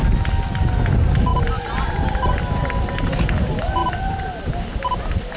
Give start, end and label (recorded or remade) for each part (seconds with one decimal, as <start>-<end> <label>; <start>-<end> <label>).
0.0-5.4 recorded